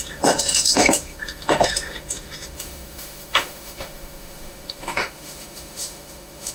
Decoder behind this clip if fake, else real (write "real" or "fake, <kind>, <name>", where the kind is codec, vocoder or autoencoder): fake, autoencoder, DAC-VAE